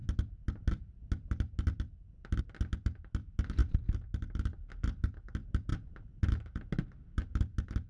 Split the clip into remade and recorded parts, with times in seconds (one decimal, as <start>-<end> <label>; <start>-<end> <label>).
0.0-7.9 recorded